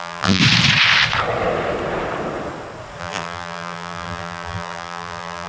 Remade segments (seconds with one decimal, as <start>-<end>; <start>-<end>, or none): 0.0-0.4; 3.0-5.5

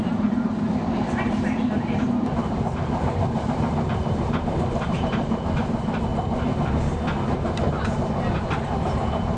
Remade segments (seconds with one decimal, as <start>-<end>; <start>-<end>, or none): 0.0-6.1; 8.4-9.4

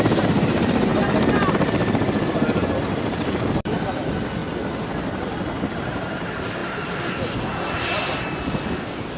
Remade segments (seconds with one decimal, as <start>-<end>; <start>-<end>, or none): 0.0-0.9; 1.5-4.4; 5.7-9.2

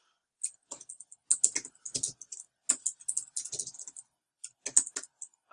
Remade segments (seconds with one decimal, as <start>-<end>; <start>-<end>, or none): none

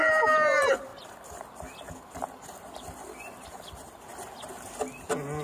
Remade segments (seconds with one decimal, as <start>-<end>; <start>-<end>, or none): 0.0-0.9; 2.1-4.1; 4.8-5.4

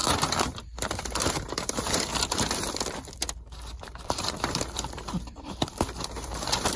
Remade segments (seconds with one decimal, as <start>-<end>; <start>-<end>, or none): 1.0-6.8